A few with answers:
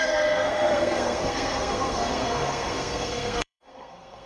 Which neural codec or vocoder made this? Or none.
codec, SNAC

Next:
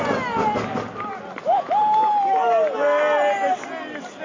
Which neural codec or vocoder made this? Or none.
none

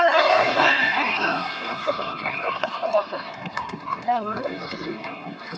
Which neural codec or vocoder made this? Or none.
codec, SNAC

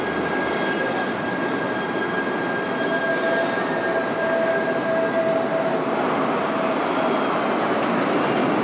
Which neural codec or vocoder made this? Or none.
none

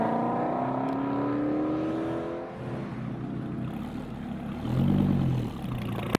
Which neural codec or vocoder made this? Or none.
none